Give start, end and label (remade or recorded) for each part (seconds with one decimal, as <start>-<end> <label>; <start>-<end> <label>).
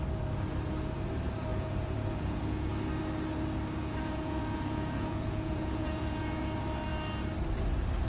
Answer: 0.0-1.5 recorded; 1.5-2.7 remade; 2.7-3.8 recorded; 3.8-6.4 remade; 6.4-8.1 recorded